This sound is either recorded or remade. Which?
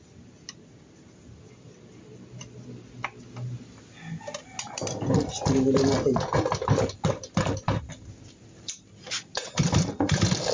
recorded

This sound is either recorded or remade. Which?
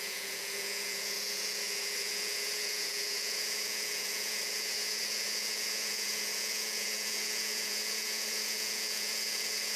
remade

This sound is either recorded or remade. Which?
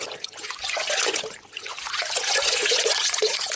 remade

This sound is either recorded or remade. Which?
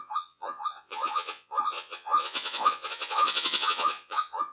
remade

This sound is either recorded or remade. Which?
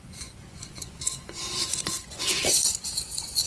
remade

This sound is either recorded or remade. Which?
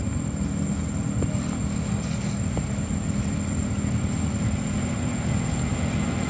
recorded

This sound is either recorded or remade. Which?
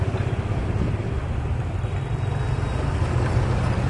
recorded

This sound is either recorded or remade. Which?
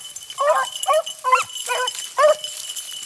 recorded